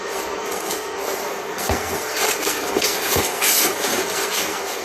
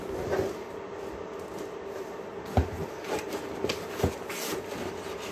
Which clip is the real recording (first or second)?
second